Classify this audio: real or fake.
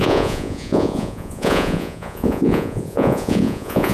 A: fake